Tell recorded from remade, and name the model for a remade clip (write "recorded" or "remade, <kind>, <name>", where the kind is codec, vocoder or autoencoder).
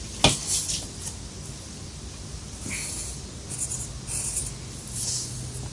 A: recorded